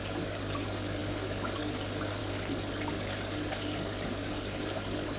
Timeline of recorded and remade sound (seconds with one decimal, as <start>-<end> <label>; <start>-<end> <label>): 0.0-2.2 remade; 2.2-2.9 recorded; 2.9-5.2 remade